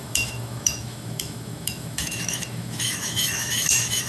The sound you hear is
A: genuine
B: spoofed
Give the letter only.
B